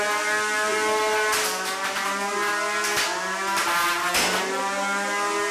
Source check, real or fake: real